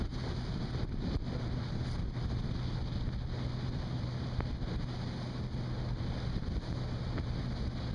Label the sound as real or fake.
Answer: real